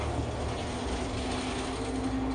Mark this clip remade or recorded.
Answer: recorded